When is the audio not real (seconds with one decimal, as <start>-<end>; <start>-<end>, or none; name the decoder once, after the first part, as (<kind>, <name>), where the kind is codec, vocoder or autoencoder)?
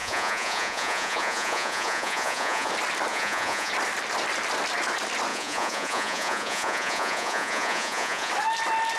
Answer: 0.0-2.7 (vocoder, Vocos); 3.1-3.7; 5.3-8.3